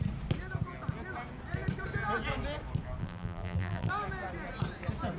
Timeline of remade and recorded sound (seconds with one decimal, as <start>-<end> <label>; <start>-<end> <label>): 0.0-3.0 recorded; 3.0-3.9 remade; 3.9-5.2 recorded